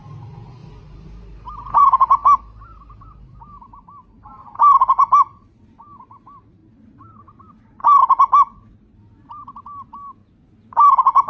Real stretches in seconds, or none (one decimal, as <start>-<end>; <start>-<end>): 0.0-2.2; 5.6-11.3